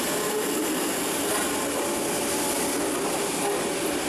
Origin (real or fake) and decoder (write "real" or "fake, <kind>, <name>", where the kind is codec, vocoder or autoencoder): real